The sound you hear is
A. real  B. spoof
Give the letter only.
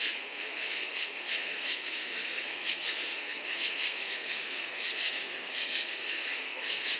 B